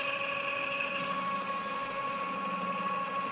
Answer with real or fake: real